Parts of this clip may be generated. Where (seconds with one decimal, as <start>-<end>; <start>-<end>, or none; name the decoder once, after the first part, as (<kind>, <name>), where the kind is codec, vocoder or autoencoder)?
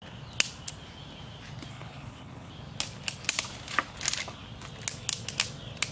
1.7-2.5 (codec, HILCodec)